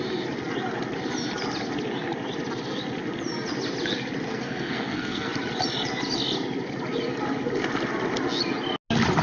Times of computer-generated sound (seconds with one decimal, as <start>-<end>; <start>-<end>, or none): 4.3-5.3